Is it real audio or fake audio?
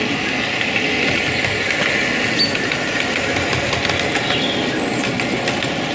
real